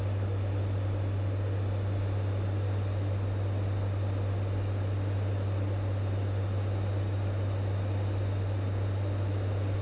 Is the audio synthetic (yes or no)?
no